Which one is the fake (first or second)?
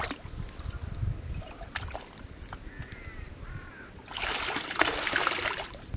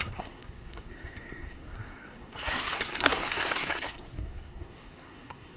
second